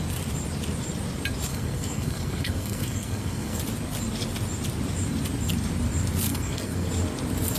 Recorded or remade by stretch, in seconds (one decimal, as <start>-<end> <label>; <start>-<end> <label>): 0.0-1.5 recorded; 1.5-3.6 remade; 3.6-6.3 recorded; 6.3-6.9 remade; 6.9-7.6 recorded

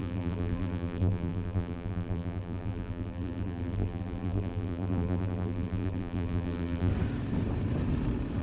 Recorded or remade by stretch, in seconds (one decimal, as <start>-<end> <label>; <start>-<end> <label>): 0.0-6.9 remade; 6.9-8.4 recorded

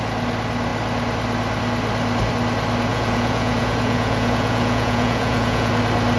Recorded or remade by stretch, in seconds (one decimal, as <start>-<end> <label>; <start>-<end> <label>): 0.0-2.9 recorded; 2.9-5.7 remade; 5.7-6.2 recorded

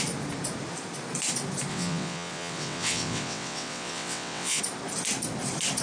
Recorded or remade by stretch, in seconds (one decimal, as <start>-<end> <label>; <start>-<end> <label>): 0.0-1.7 recorded; 1.7-4.6 remade; 4.6-5.8 recorded

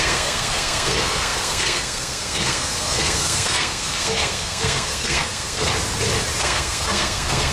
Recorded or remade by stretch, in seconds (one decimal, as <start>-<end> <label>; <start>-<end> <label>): 0.0-5.7 remade; 5.7-6.4 recorded; 6.4-7.5 remade

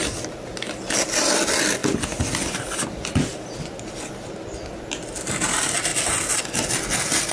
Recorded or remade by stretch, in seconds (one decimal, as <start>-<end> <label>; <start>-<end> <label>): 0.0-7.3 recorded

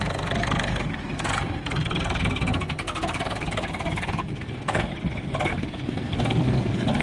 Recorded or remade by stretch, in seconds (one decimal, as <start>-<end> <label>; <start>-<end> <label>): 0.0-4.9 remade; 4.9-5.5 recorded; 5.5-7.0 remade

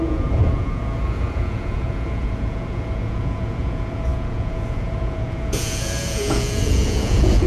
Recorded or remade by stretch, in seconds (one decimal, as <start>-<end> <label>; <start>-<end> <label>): 0.0-7.5 remade